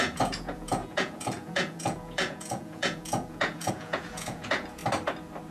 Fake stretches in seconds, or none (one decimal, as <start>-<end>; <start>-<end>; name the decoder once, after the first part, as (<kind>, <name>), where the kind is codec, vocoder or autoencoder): 0.0-4.8 (vocoder, Vocos)

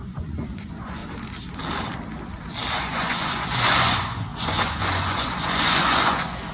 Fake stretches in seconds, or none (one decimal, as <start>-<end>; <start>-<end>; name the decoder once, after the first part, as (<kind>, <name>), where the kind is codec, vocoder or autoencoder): 0.0-1.0 (vocoder, Vocos); 2.7-6.5